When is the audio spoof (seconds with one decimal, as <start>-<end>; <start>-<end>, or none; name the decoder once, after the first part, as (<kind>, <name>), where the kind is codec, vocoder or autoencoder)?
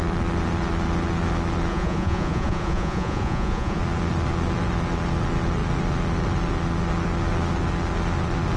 1.7-3.8 (vocoder, Vocos)